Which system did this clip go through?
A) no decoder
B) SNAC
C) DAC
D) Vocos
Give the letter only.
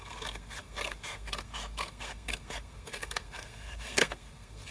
B